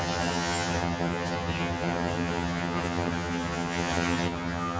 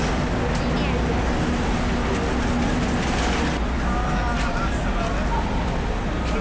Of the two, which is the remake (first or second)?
first